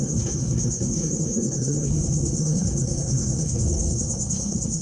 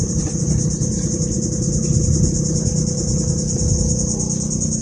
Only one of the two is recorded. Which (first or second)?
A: second